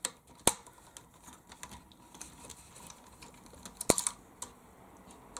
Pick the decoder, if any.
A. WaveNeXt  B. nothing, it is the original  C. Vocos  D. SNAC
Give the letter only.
B